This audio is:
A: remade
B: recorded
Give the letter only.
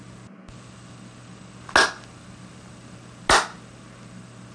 B